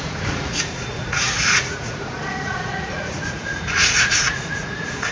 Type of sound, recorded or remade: remade